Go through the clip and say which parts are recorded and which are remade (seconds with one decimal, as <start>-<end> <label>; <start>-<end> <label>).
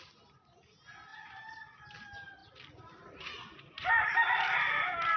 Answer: 0.0-5.2 recorded